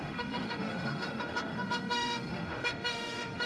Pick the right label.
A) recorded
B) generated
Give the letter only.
B